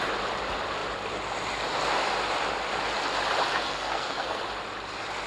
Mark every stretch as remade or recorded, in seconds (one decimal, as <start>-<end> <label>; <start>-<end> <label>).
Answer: 0.0-3.5 recorded; 3.5-4.4 remade; 4.4-5.3 recorded